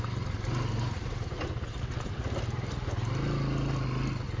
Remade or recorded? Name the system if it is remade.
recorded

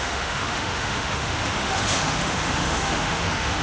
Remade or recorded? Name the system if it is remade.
remade, autoencoder, DAC-VAE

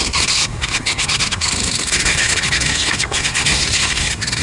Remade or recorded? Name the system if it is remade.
remade, codec, SNAC